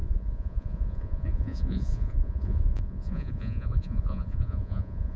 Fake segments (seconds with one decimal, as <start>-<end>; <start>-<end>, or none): 0.0-5.2